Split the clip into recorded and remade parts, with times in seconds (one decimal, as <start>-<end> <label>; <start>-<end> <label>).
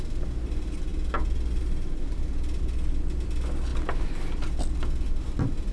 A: 0.0-5.7 recorded